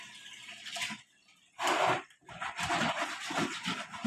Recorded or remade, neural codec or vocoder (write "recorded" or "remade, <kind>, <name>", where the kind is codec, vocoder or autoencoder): remade, vocoder, BigVGAN v2